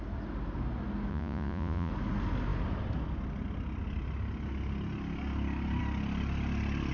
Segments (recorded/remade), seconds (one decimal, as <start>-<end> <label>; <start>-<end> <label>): 0.0-1.1 recorded; 1.1-1.9 remade; 1.9-6.9 recorded

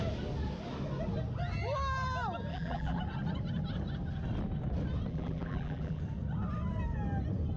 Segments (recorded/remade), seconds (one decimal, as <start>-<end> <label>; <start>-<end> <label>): 0.0-2.5 recorded; 2.5-3.0 remade; 3.0-5.1 recorded; 5.1-6.0 remade; 6.0-7.6 recorded

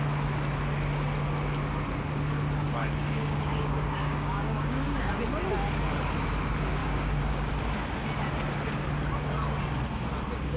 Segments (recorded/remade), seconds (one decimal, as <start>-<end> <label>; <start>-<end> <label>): 0.0-2.8 recorded; 2.8-5.1 remade; 5.1-6.8 recorded; 6.8-7.5 remade; 7.5-10.6 recorded

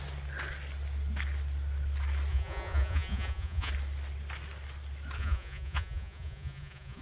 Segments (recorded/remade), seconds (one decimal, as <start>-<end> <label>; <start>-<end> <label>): 0.0-2.3 recorded; 2.3-3.7 remade; 3.7-5.2 recorded; 5.2-7.0 remade

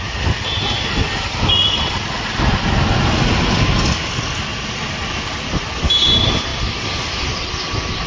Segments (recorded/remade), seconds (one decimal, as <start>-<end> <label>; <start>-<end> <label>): 0.0-8.1 recorded